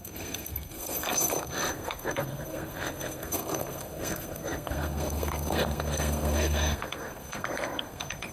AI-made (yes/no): yes